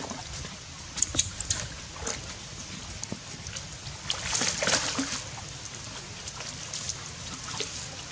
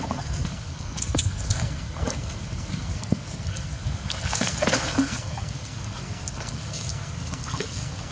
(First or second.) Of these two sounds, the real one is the first